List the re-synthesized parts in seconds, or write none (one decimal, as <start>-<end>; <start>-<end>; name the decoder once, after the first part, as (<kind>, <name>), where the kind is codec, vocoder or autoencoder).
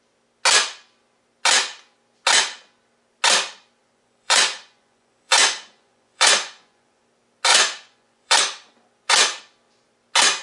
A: 3.8-7.0 (vocoder, Vocos); 7.5-8.4